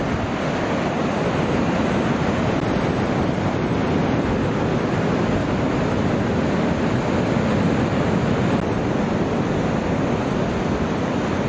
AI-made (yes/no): no